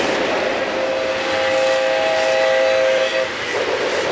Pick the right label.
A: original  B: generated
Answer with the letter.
A